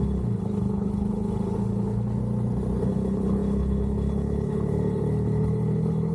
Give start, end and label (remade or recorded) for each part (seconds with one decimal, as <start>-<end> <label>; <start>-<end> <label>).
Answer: 0.0-2.2 remade; 2.2-2.8 recorded; 2.8-6.1 remade